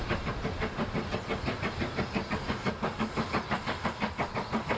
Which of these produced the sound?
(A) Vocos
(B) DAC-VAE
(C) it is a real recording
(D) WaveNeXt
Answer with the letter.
C